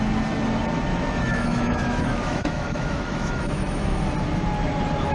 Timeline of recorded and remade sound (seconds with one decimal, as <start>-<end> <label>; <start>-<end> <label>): 0.0-0.9 recorded; 0.9-4.0 remade; 4.0-5.1 recorded